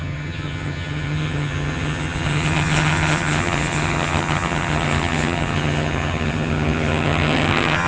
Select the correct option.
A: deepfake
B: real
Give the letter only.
A